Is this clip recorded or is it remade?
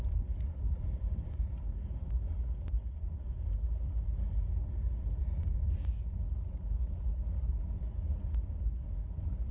recorded